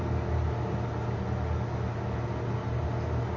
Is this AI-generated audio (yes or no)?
no